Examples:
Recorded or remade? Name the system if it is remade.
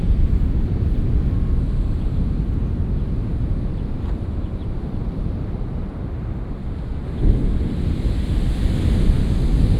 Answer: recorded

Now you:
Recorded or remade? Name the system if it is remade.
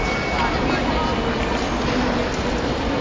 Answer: recorded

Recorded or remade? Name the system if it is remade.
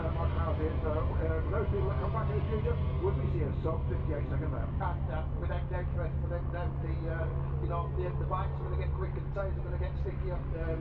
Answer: recorded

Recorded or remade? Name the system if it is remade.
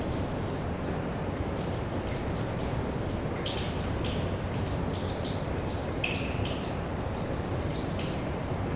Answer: recorded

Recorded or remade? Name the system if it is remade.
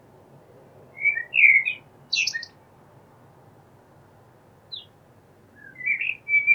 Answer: recorded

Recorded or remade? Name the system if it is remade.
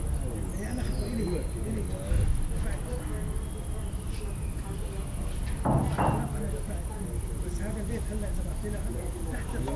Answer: recorded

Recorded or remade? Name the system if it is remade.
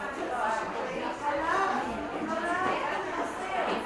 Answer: recorded